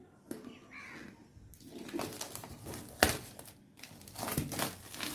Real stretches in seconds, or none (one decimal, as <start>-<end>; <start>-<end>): 0.0-5.1